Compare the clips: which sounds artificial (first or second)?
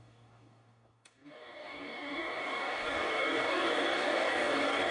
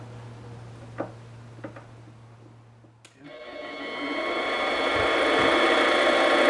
first